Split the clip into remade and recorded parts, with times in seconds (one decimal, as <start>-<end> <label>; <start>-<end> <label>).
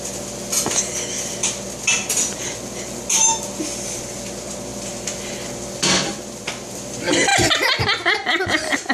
0.0-8.9 recorded